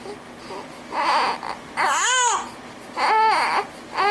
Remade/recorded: recorded